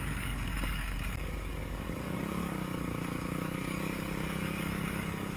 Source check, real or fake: fake